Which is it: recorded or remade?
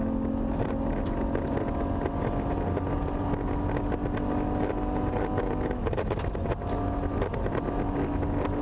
recorded